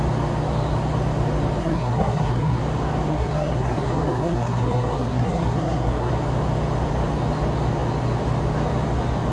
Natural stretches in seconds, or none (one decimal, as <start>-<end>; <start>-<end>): 0.0-1.6; 2.6-3.1; 6.1-9.3